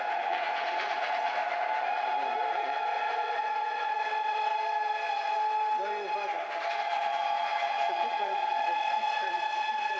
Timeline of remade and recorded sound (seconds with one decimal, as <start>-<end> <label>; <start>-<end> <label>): 0.0-1.4 remade; 1.4-2.5 recorded; 2.5-4.5 remade; 4.5-6.7 recorded; 6.7-10.0 remade